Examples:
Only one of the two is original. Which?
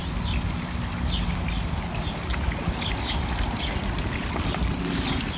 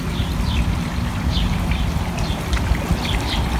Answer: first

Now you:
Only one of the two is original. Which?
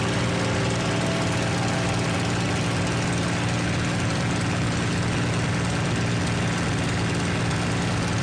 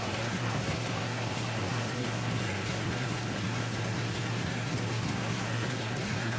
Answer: first